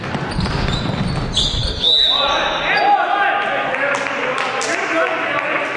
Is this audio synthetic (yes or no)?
no